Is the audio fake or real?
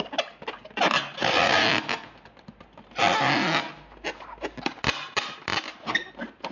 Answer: real